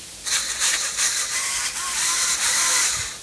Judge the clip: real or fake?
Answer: fake